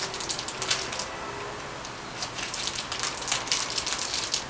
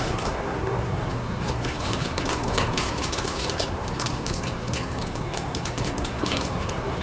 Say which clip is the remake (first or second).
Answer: second